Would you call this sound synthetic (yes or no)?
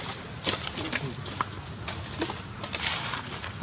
no